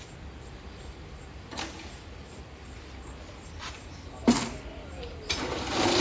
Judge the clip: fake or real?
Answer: real